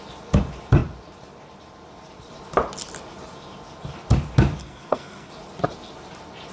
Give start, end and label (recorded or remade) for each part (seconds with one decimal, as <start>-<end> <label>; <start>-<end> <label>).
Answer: 0.0-4.6 recorded; 4.6-5.3 remade; 5.3-6.5 recorded